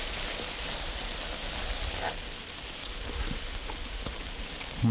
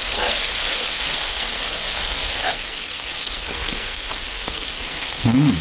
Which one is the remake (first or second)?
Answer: second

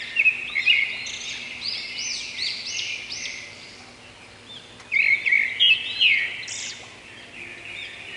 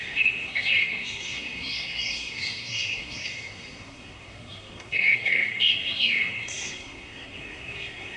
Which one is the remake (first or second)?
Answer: second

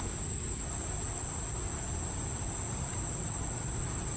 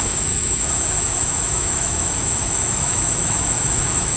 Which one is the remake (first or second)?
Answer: second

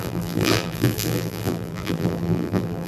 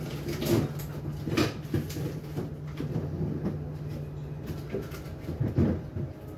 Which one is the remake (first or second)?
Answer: first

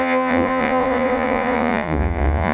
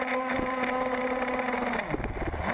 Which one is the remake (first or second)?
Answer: first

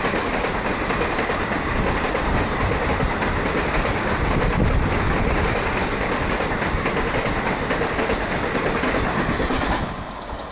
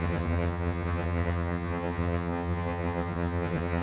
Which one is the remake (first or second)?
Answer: second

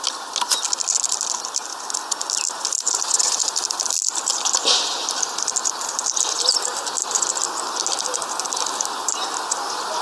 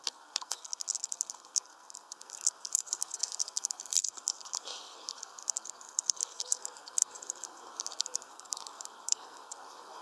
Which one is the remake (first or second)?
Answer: second